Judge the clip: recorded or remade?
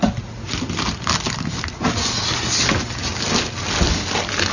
recorded